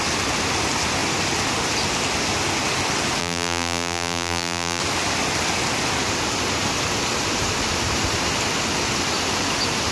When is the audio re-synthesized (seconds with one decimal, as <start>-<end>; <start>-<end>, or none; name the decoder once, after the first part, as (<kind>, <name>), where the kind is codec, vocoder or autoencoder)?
3.2-4.8 (vocoder, BigVGAN v2)